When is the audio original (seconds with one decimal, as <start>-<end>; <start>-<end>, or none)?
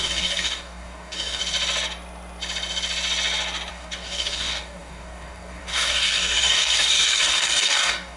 1.4-3.7